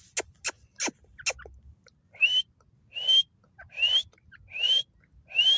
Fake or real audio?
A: real